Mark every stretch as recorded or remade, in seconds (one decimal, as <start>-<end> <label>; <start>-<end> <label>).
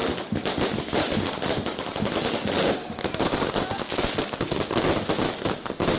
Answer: 0.0-6.0 recorded